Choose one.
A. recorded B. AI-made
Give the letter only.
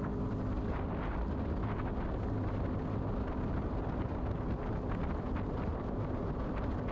A